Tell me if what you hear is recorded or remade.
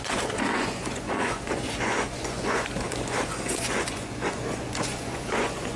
remade